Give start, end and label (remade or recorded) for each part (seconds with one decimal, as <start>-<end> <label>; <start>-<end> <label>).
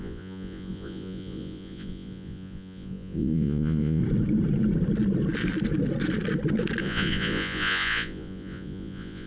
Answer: 0.0-4.0 remade; 4.0-6.8 recorded; 6.8-9.3 remade